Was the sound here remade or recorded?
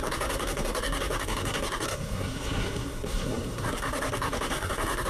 remade